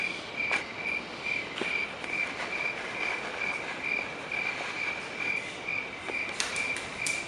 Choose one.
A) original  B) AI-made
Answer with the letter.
A